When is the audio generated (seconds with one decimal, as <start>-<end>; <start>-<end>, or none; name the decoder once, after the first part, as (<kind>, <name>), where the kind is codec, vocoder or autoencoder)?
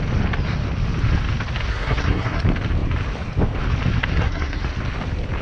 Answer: 1.7-2.4 (codec, SNAC); 4.1-4.6